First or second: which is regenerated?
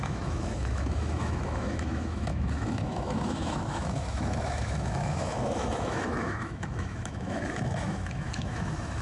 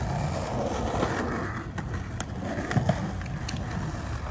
first